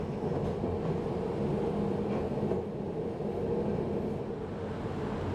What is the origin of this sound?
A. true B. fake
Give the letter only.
A